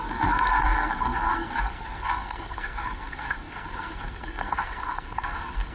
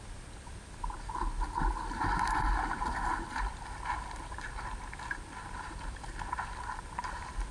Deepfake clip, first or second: first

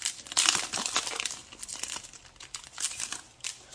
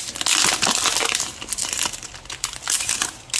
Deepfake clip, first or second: first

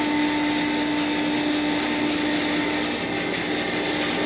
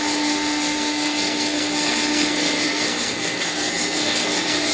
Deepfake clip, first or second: second